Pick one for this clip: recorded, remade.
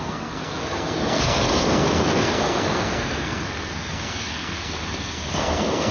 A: remade